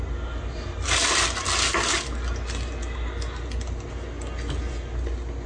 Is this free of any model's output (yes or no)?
yes